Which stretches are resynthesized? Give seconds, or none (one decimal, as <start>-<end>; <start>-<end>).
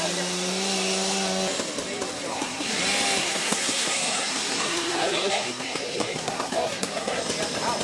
2.3-2.8; 3.2-7.2